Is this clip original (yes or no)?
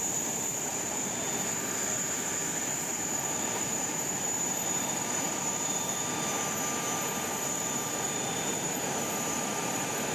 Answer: no